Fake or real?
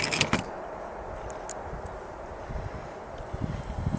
real